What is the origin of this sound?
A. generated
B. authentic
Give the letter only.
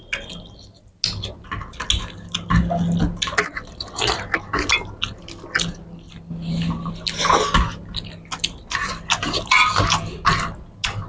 B